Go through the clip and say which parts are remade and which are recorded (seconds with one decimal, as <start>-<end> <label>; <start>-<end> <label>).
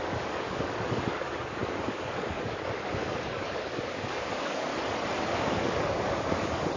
0.0-4.7 remade; 4.7-5.2 recorded; 5.2-6.8 remade